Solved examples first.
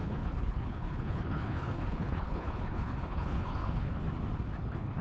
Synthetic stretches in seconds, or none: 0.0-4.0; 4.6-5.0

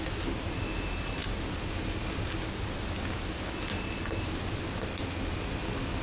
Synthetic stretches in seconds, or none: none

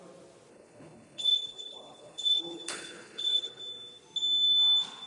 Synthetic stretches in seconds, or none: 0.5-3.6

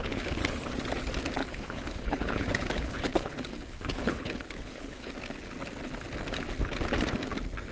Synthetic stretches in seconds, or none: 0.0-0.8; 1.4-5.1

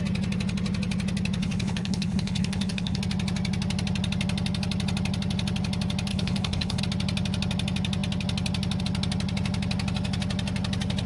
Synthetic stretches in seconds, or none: 1.4-3.0; 6.1-6.8

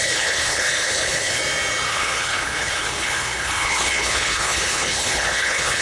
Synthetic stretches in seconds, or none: 0.0-1.4; 1.9-5.8